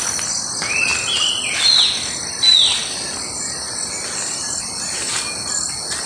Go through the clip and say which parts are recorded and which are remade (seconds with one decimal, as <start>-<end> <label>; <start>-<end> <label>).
0.0-6.1 recorded